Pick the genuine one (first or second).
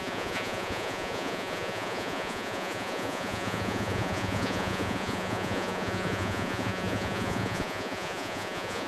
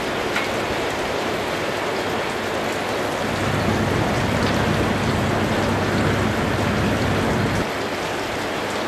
second